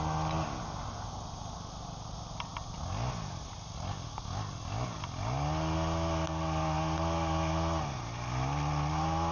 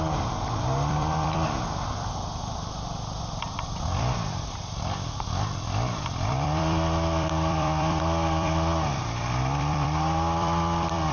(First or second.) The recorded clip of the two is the first